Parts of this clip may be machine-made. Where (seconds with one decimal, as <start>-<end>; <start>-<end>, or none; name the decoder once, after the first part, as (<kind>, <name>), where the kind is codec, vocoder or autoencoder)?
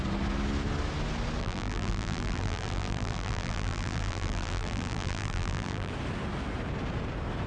1.4-5.9 (vocoder, BigVGAN v2)